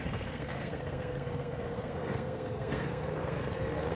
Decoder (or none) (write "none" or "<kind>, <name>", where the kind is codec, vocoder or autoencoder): codec, SNAC